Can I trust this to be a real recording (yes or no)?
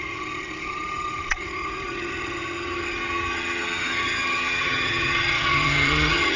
no